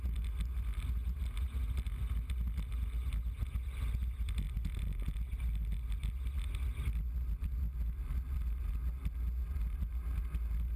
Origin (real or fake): real